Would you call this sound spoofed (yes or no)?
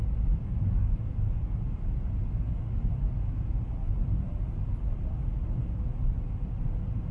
no